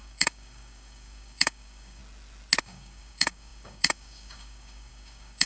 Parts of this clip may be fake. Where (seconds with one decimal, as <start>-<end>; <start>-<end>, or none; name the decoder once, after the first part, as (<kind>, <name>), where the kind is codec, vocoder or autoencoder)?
0.0-2.0 (codec, DAC); 2.6-5.5